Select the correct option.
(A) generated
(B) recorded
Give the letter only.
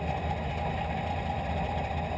B